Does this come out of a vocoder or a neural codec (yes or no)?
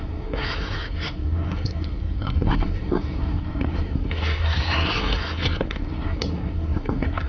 yes